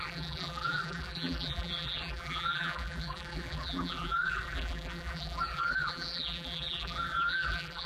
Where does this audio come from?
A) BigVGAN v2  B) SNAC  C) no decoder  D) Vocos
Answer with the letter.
A